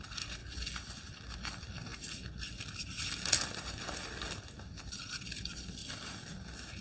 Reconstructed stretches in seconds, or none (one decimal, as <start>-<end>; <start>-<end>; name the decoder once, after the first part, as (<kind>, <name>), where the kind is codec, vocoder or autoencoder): 0.0-0.4 (vocoder, BigVGAN v2); 1.1-6.8

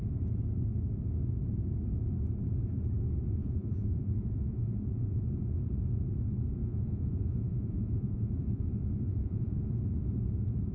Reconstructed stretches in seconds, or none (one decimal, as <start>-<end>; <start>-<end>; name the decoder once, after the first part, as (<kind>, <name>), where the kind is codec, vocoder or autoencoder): 3.4-5.3 (vocoder, Vocos); 6.6-8.6; 9.1-9.7

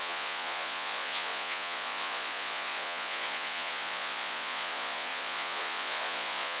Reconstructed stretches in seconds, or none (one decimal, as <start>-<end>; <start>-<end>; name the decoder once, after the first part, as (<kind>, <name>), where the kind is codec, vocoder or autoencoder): 0.0-6.6 (vocoder, Vocos)

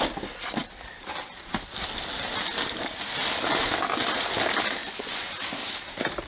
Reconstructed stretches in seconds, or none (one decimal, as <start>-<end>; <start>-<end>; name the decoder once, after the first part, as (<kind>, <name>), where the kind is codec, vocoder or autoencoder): 4.8-5.3 (vocoder, Vocos)

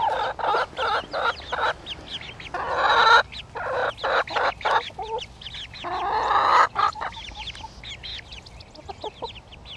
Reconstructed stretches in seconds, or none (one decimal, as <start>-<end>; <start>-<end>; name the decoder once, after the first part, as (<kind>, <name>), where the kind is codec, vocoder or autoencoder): 3.8-5.9 (vocoder, BigVGAN v2); 8.1-8.9